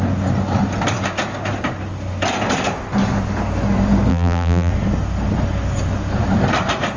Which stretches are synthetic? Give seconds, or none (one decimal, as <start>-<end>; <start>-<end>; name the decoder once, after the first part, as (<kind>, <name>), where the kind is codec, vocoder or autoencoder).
4.1-4.7 (vocoder, BigVGAN v2)